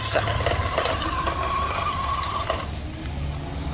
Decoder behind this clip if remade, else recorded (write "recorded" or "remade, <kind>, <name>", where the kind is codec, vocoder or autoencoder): recorded